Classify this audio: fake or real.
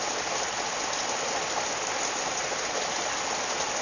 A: real